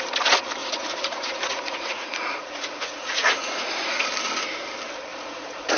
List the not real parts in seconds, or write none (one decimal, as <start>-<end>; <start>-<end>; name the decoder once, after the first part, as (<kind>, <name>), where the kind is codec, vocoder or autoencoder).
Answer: 0.6-4.1 (vocoder, Vocos); 5.1-5.8